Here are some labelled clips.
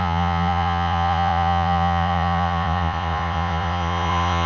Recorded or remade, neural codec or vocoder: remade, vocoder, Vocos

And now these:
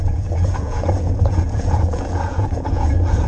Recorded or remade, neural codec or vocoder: remade, vocoder, Vocos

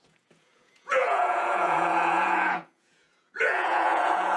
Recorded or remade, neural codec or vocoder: remade, vocoder, Vocos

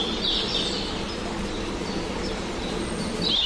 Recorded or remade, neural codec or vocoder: recorded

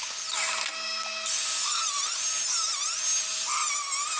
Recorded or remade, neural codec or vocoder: recorded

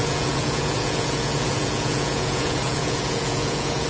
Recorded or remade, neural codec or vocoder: remade, vocoder, Vocos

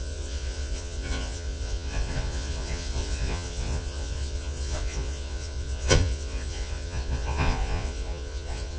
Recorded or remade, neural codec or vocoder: remade, vocoder, Vocos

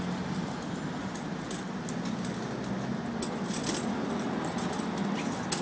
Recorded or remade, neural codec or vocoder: recorded